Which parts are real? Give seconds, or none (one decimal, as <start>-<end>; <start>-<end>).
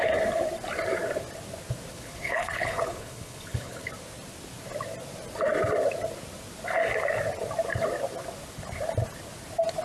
0.0-1.9; 3.9-9.8